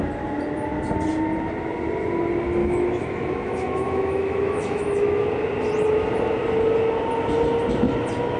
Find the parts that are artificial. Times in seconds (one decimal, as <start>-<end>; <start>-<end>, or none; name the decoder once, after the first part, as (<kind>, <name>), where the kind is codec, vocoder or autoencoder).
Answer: 2.6-5.3 (autoencoder, DAC-VAE)